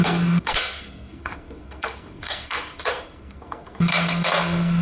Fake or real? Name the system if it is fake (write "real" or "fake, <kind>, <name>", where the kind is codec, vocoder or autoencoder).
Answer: fake, codec, SNAC